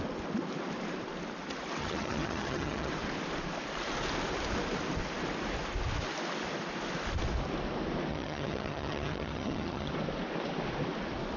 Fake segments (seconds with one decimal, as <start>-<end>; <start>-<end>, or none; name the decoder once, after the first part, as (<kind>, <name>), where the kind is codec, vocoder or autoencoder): 1.8-2.9 (vocoder, HiFi-GAN); 8.1-9.9